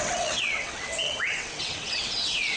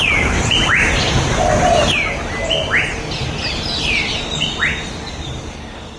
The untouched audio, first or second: second